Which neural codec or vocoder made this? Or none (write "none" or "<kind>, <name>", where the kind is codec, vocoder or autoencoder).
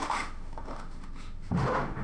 autoencoder, DAC-VAE